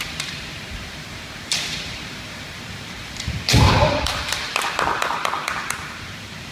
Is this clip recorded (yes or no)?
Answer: no